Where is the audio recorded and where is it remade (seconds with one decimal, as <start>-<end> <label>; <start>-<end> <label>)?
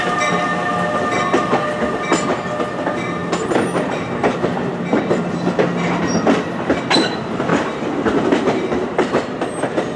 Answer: 0.0-3.2 recorded; 3.2-5.3 remade; 5.3-7.5 recorded; 7.5-9.6 remade; 9.6-10.0 recorded